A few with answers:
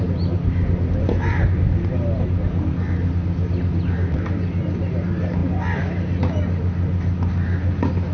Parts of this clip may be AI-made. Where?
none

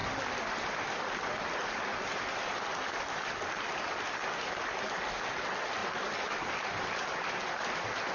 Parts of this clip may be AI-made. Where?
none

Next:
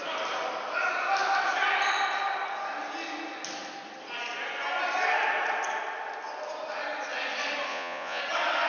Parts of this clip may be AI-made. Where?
7.7-8.2 (vocoder, Vocos)